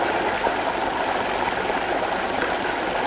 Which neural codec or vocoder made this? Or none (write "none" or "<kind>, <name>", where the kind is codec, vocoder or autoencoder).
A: none